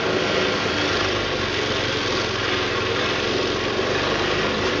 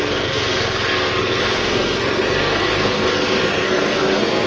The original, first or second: first